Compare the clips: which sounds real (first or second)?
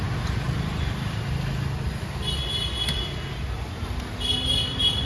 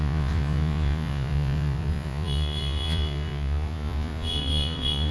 first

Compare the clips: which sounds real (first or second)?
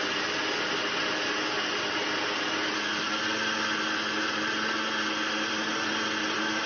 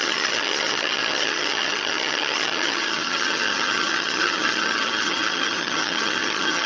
first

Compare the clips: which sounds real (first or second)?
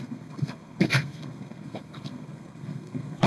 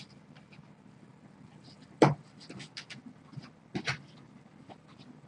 second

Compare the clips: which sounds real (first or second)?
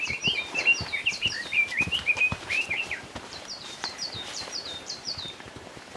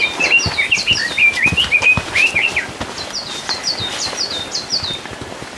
second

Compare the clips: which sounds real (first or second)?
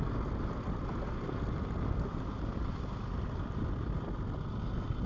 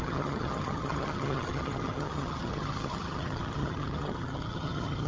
first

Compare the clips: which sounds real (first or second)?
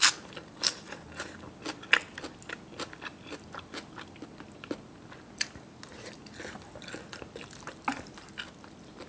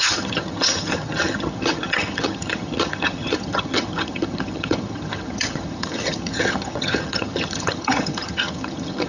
first